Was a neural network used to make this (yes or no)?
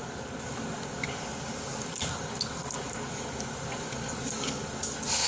yes